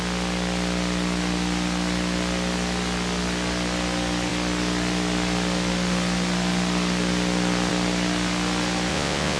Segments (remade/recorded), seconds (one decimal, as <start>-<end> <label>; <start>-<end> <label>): 0.0-8.9 recorded; 8.9-9.4 remade